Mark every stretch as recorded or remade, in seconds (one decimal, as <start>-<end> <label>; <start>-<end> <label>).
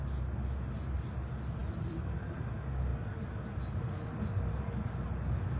0.0-1.6 recorded; 1.6-2.4 remade; 2.4-2.9 recorded; 2.9-3.5 remade; 3.5-5.6 recorded